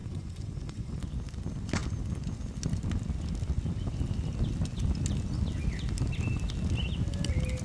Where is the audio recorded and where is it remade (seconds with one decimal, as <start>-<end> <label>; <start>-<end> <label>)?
0.0-1.0 remade; 1.0-7.6 recorded